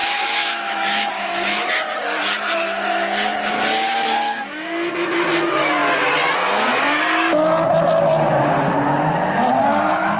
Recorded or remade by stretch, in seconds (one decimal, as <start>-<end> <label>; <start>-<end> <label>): 0.0-1.7 remade; 1.7-10.2 recorded